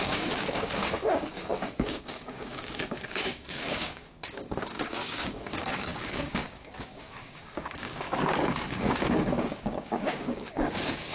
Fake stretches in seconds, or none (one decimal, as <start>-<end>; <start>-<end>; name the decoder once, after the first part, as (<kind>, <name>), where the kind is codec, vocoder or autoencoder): 0.0-11.1 (codec, DAC)